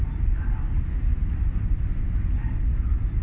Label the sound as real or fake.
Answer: real